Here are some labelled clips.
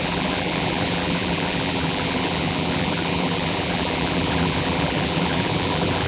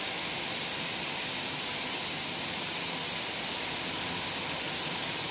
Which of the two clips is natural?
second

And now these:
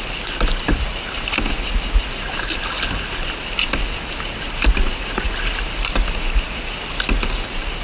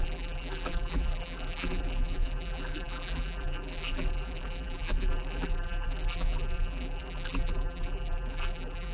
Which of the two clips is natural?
first